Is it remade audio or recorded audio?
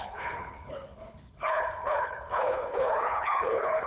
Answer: remade